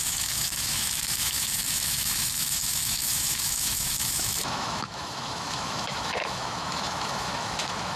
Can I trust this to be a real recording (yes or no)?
no